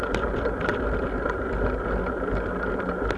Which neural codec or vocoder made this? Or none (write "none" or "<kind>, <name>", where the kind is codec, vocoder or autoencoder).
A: none